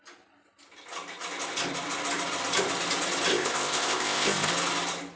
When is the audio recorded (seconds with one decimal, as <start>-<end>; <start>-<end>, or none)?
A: 0.0-3.3; 4.5-5.2